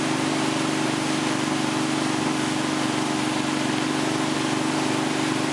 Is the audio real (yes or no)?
yes